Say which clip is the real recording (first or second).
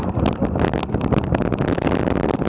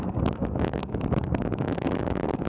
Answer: first